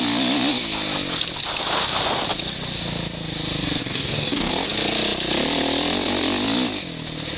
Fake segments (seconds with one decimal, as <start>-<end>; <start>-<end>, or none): 3.8-4.5